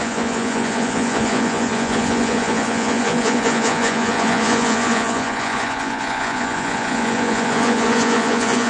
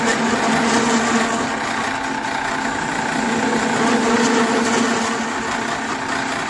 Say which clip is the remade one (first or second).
first